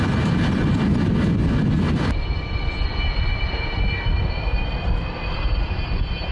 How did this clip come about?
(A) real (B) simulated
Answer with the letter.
A